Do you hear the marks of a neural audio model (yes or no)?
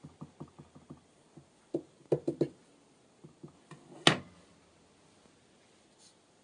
no